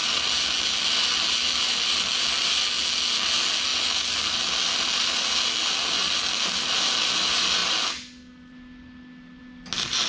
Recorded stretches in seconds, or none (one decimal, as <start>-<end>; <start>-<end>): 0.0-10.1